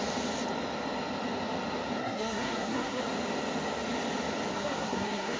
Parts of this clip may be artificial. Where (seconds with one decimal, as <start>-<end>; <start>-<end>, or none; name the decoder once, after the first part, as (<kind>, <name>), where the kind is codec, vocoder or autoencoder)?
2.0-3.0 (codec, SNAC); 4.5-5.4